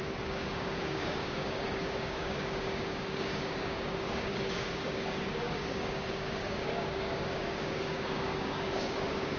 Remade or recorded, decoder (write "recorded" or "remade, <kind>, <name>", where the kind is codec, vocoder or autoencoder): remade, codec, DAC